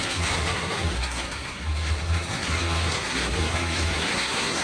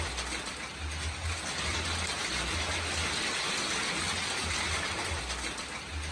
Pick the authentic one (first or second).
second